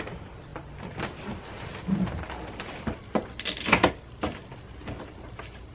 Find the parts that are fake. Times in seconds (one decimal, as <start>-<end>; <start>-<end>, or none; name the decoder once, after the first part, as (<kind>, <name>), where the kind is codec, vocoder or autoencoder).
none